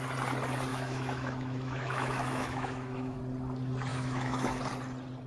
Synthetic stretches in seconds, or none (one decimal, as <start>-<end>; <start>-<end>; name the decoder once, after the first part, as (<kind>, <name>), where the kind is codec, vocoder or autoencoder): 0.7-3.2 (autoencoder, DAC-VAE); 3.9-4.6